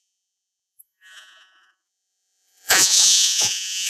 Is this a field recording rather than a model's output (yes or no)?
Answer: no